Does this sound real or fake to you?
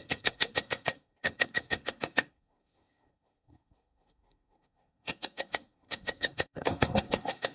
fake